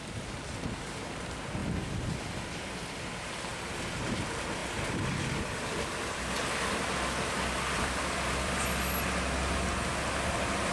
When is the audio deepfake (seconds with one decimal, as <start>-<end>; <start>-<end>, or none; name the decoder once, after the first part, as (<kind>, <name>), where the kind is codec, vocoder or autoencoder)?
1.6-3.0 (vocoder, BigVGAN v2); 3.5-4.0; 4.6-8.6